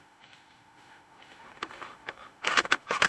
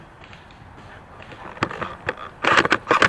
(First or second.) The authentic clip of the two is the second